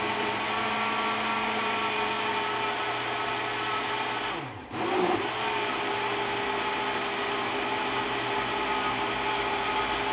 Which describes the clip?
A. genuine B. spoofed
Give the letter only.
A